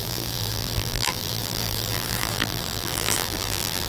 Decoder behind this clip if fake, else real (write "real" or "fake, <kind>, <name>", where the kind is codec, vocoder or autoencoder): fake, vocoder, BigVGAN v2